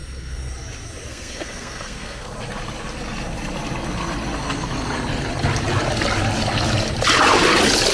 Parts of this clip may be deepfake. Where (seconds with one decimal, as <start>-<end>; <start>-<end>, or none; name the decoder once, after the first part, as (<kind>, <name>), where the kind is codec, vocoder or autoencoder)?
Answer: 0.0-0.5 (codec, SNAC); 1.1-2.3